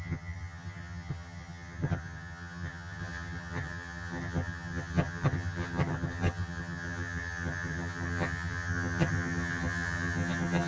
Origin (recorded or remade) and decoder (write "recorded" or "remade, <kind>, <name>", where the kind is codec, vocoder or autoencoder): remade, vocoder, HiFi-GAN